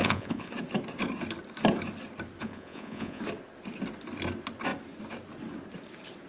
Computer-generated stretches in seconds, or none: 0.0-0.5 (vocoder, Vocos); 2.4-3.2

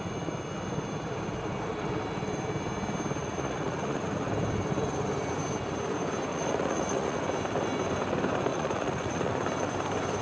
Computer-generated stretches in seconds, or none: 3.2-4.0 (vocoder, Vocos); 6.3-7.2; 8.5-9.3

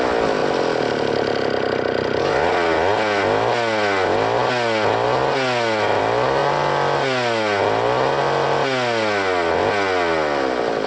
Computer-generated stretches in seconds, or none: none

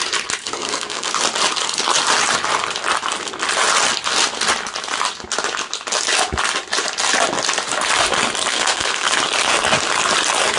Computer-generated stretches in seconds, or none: 0.4-1.1 (codec, SNAC); 8.5-9.1

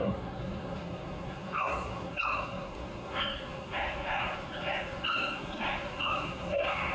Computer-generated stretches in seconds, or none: 0.0-6.9 (codec, SNAC)